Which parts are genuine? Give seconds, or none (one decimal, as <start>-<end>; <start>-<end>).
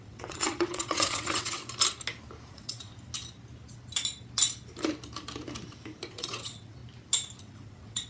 1.6-2.5; 2.9-6.1; 6.8-7.4